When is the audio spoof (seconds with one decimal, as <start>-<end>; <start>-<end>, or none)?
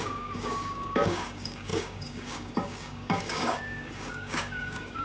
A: 0.0-5.0